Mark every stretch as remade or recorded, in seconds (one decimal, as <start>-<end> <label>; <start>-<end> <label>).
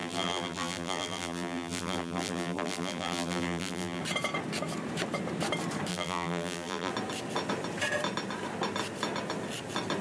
0.0-4.0 remade; 4.0-5.9 recorded; 5.9-6.9 remade; 6.9-10.0 recorded